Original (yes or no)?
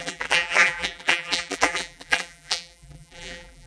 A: no